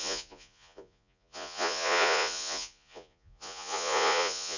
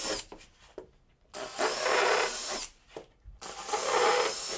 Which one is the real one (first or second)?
second